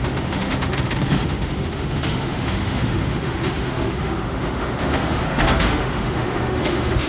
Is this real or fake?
fake